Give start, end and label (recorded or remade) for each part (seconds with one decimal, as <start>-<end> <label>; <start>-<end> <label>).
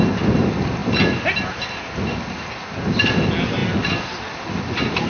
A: 0.0-5.1 recorded